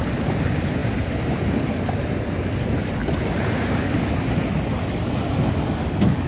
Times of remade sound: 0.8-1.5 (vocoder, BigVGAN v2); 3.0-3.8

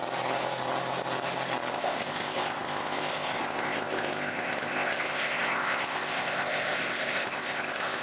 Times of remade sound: 1.7-8.0 (codec, ZipCodec)